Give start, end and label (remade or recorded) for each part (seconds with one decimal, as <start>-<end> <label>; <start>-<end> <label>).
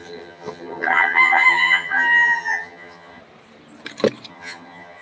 0.0-3.2 remade; 3.2-4.3 recorded; 4.3-5.0 remade